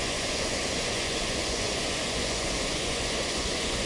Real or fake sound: fake